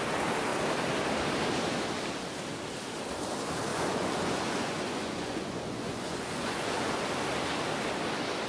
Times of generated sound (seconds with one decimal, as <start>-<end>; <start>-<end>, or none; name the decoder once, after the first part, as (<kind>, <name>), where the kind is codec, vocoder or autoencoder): 3.7-6.9 (vocoder, Vocos)